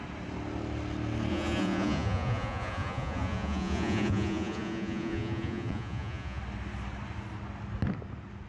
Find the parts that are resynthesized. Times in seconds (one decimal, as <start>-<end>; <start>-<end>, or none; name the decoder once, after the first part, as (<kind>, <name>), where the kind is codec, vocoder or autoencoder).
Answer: 1.3-6.4 (vocoder, Vocos)